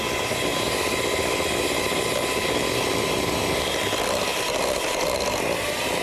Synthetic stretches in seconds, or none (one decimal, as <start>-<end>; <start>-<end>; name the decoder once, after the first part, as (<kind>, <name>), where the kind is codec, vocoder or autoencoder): none